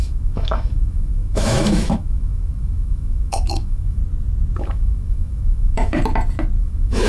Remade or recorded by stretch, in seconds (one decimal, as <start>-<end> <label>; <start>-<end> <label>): 0.0-4.0 remade; 4.0-4.6 recorded; 4.6-6.0 remade; 6.0-6.6 recorded; 6.6-7.1 remade